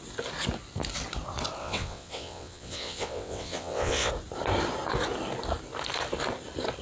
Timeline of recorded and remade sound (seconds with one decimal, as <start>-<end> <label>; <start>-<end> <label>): 0.0-1.6 recorded; 1.6-4.1 remade; 4.1-6.8 recorded